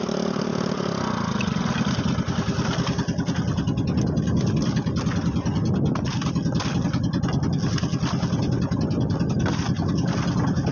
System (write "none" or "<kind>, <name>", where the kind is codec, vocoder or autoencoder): none